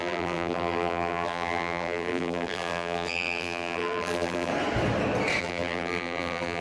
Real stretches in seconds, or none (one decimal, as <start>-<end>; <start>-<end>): 4.5-5.4